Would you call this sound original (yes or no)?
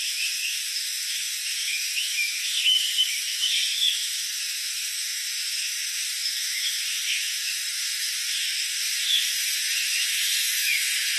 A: no